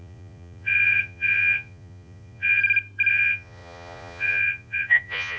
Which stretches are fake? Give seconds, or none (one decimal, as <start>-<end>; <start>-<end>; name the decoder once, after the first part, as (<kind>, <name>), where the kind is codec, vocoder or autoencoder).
0.0-2.6 (vocoder, Vocos); 3.1-5.4